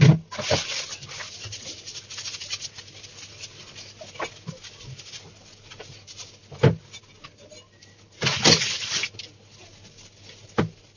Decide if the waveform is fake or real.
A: real